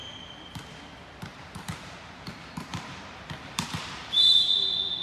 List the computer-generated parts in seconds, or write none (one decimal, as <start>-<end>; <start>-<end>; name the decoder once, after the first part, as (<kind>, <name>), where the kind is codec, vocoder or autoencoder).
1.3-2.3 (vocoder, BigVGAN v2); 2.7-4.3